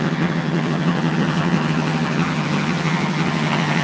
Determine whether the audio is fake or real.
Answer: fake